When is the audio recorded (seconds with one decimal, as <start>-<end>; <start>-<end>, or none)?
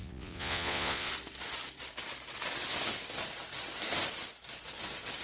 1.1-5.2